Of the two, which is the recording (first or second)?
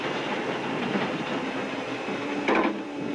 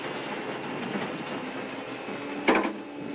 second